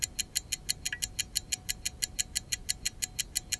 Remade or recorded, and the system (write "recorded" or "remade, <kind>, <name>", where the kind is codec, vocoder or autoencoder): recorded